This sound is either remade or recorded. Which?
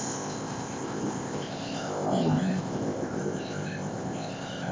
remade